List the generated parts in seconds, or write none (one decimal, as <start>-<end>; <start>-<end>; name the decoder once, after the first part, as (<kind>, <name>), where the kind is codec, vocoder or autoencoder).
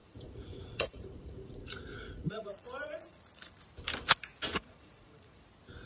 0.0-3.5 (vocoder, Vocos); 4.5-5.4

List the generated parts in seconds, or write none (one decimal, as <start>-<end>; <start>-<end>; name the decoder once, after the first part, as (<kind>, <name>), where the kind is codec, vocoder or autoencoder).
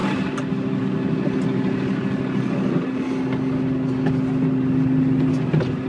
none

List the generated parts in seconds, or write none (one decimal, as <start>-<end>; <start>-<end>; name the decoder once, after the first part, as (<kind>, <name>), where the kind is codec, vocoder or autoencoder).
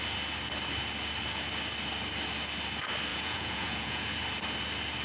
3.1-4.2 (vocoder, Vocos)